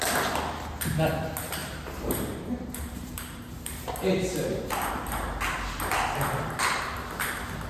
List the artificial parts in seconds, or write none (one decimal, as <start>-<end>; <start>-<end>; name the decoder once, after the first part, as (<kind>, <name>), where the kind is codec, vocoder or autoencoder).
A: 1.6-4.9 (vocoder, BigVGAN v2)